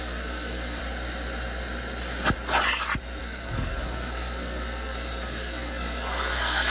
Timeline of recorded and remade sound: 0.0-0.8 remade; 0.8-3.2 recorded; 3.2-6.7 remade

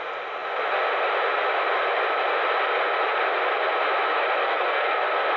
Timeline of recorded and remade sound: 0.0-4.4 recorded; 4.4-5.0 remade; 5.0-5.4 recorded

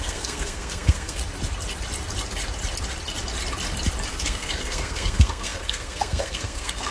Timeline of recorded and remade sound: 0.0-1.2 remade; 1.2-4.1 recorded; 4.1-6.9 remade

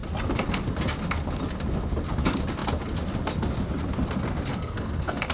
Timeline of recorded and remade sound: 0.0-4.5 recorded; 4.5-5.3 remade